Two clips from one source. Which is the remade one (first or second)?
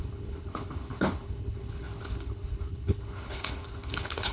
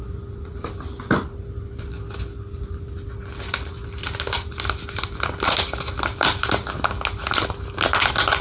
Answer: first